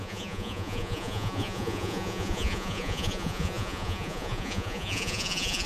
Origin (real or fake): fake